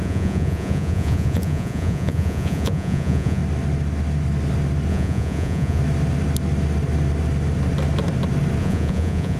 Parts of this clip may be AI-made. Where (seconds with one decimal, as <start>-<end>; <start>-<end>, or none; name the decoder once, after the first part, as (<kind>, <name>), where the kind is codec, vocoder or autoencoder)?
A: 0.0-3.4 (vocoder, Vocos); 4.9-5.8; 8.6-9.4